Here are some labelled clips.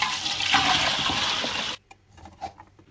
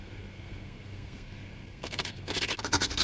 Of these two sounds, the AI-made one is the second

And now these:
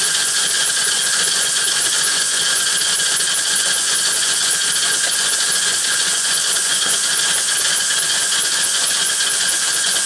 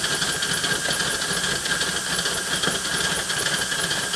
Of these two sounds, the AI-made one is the first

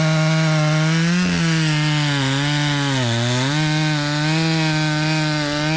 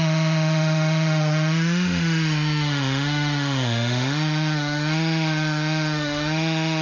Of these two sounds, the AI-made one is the second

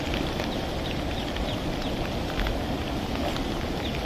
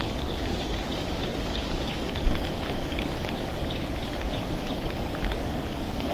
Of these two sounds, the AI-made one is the second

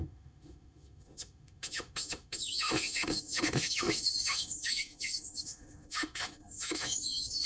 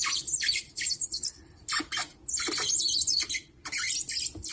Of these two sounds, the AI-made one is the first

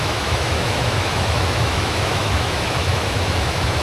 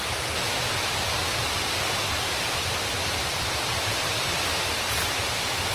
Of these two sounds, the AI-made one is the first